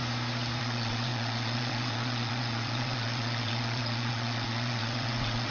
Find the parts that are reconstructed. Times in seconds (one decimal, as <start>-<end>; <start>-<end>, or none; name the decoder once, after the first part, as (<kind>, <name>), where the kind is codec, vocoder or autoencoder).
0.6-5.5 (vocoder, WaveNeXt)